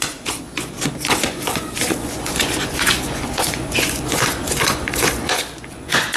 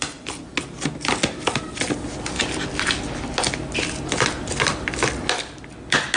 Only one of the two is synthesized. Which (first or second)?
first